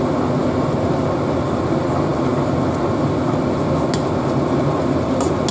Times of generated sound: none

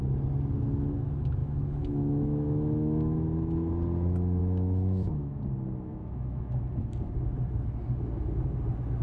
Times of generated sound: 1.4-3.7 (autoencoder, DAC-VAE); 4.4-5.4; 5.9-6.6

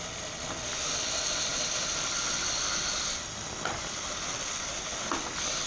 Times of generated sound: none

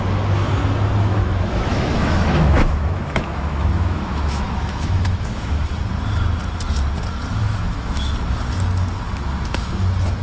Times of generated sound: 1.1-5.6 (autoencoder, DAC-VAE); 7.4-8.1

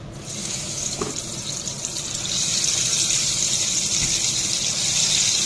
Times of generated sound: 0.4-1.1 (autoencoder, DAC-VAE)

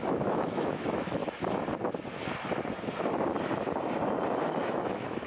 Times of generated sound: 0.0-1.2 (autoencoder, DAC-VAE); 4.4-5.3